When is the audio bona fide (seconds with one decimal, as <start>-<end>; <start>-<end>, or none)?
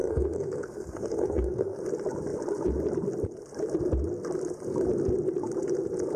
1.8-6.2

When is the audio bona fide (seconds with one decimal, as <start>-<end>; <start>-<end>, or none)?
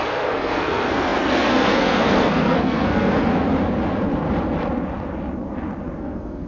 3.3-6.0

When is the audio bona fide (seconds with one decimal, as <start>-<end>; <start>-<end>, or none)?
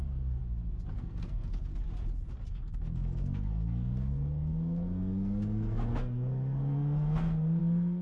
0.4-0.9; 1.7-2.5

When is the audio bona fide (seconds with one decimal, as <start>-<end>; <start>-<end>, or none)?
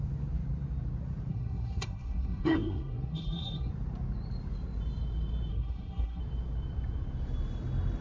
0.0-1.3; 3.7-5.5; 6.2-8.0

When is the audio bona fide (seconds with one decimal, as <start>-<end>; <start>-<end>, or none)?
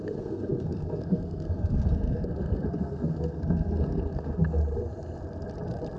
4.6-6.0